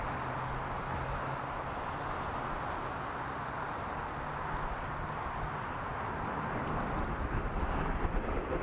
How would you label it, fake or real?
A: real